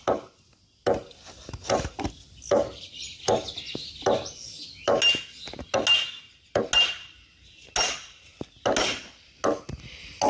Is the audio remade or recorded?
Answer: recorded